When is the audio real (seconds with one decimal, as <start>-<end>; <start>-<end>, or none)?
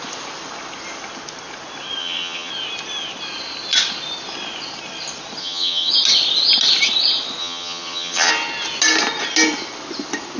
0.0-2.0; 2.5-5.4; 5.9-7.4; 8.3-10.4